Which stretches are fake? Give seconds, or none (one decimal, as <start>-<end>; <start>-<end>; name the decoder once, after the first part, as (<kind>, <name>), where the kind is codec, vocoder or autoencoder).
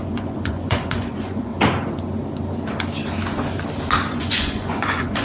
0.0-1.5 (vocoder, Vocos); 4.1-5.2